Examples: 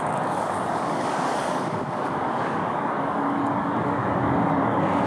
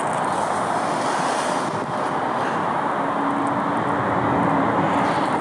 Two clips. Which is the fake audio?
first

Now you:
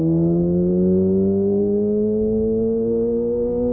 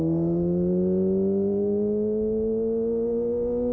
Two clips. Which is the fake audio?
first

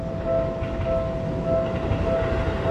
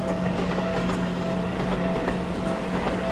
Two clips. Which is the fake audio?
second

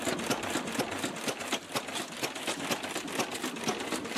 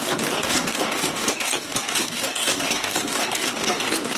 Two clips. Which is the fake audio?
second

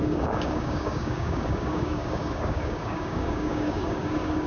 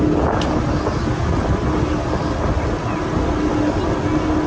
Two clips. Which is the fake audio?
first